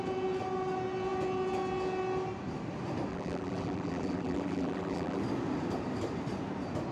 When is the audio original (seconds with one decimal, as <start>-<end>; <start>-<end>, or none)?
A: 0.0-3.1; 5.2-6.9